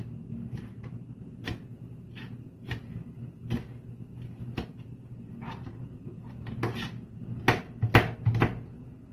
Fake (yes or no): no